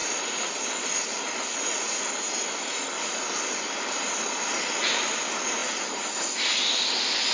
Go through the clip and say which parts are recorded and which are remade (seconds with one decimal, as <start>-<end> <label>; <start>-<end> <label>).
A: 0.0-7.3 recorded